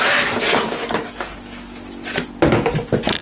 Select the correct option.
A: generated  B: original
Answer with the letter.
B